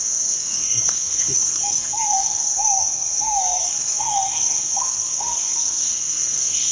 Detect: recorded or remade remade